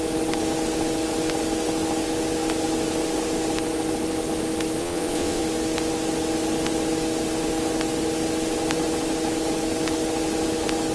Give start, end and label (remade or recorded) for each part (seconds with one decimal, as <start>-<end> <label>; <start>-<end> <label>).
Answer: 0.0-4.8 recorded; 4.8-5.4 remade; 5.4-10.9 recorded